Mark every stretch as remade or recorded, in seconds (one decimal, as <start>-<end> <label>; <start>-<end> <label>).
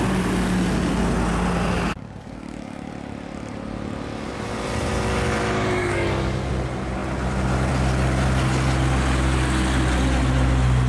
0.0-1.9 recorded; 1.9-2.9 remade; 2.9-5.8 recorded; 5.8-6.5 remade; 6.5-10.9 recorded